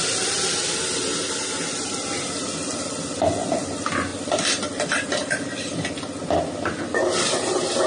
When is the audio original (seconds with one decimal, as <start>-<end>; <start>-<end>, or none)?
0.0-7.9

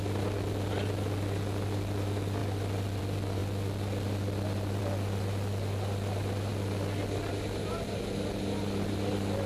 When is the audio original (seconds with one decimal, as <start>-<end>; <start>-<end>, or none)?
0.0-9.5

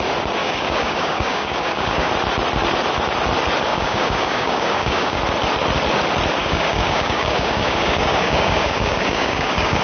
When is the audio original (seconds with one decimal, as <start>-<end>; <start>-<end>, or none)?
0.0-0.4; 2.1-3.7; 5.2-6.4

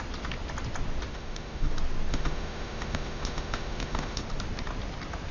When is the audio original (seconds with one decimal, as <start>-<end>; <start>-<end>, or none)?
0.0-1.1; 1.7-2.1; 4.2-5.3

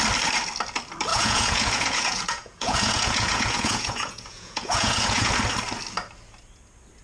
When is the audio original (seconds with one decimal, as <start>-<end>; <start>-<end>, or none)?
0.0-1.1; 5.3-7.0

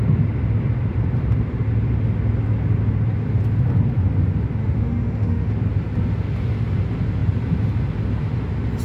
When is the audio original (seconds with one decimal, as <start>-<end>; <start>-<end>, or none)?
0.0-4.6; 5.5-8.8